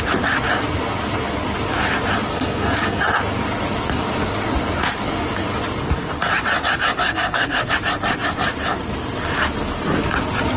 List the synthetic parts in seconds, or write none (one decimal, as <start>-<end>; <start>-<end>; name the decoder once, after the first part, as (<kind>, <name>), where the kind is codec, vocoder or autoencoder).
2.3-3.0 (codec, SNAC); 7.0-7.7